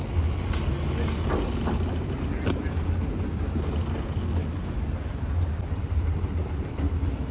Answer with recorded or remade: recorded